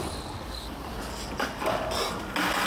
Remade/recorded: recorded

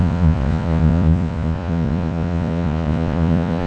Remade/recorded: remade